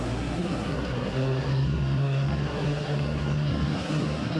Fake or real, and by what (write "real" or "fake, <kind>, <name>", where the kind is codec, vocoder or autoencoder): fake, codec, SNAC